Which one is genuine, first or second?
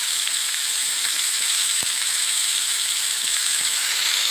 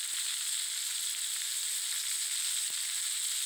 second